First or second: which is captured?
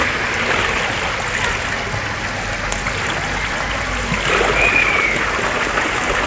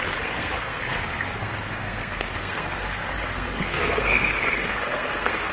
first